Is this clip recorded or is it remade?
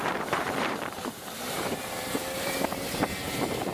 remade